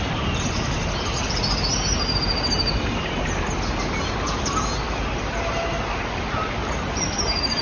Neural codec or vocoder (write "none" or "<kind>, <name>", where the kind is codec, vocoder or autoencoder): none